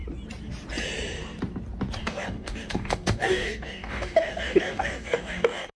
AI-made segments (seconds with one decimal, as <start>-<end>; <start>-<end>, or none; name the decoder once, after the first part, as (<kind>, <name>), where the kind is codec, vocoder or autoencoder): 2.0-5.8 (codec, DAC)